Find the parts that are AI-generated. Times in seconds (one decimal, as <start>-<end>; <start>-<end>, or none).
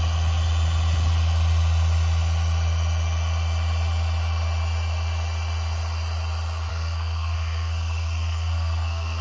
6.7-9.2